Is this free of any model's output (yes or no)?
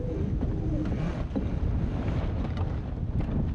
yes